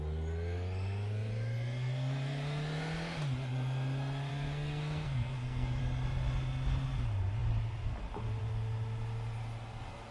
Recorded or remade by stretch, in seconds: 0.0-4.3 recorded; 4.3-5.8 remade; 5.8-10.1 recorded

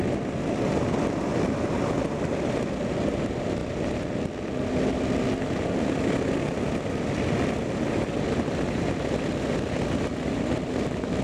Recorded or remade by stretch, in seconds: 0.0-11.2 recorded

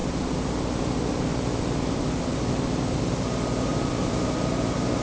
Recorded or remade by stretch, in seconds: 0.0-3.0 remade; 3.0-3.7 recorded; 3.7-4.4 remade; 4.4-5.0 recorded

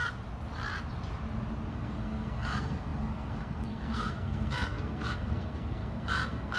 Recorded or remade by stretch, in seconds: 0.0-1.7 recorded; 1.7-6.6 remade